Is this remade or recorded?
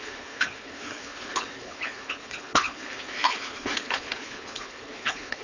remade